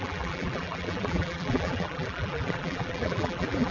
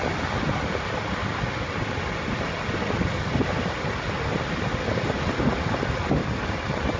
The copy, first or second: first